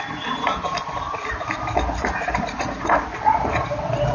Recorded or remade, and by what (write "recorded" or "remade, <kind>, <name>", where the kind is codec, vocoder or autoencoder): recorded